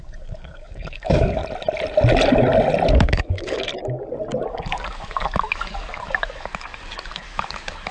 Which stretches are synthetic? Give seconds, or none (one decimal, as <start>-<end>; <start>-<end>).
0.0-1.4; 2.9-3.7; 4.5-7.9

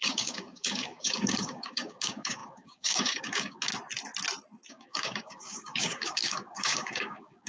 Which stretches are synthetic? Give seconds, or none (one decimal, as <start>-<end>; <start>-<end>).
0.0-3.7; 4.7-7.5

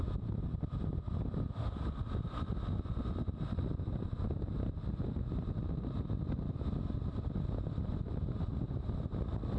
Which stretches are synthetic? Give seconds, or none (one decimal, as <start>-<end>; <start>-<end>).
none

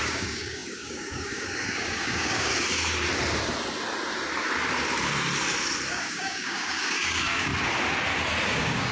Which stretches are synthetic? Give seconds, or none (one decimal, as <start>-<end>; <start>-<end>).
0.0-2.5; 5.9-7.5; 8.5-8.9

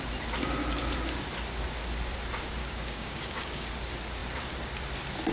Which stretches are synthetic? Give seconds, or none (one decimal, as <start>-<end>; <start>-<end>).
2.6-3.7

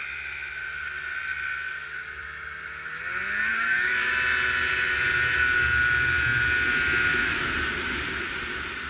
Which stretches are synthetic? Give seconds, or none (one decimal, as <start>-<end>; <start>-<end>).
3.5-4.1

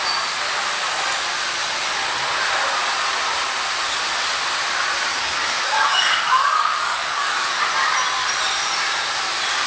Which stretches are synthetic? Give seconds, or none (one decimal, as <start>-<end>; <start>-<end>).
5.1-7.6

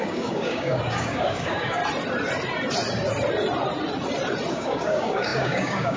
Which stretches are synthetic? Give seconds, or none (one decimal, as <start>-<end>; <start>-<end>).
0.0-1.8; 4.5-6.0